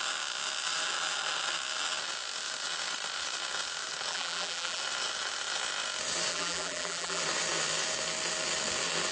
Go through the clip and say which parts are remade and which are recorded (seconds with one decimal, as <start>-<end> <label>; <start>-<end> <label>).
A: 0.0-4.1 recorded; 4.1-4.8 remade; 4.8-6.3 recorded; 6.3-7.2 remade; 7.2-9.1 recorded